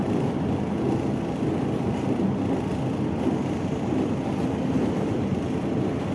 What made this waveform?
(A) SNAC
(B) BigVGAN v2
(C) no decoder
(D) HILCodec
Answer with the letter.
B